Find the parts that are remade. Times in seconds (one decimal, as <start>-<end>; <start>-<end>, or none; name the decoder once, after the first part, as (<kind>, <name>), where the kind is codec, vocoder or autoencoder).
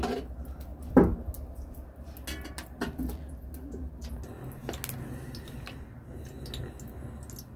none